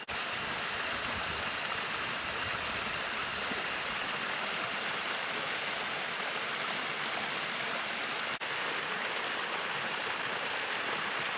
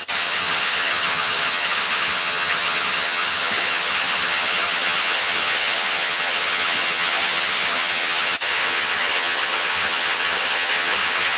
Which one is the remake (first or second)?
second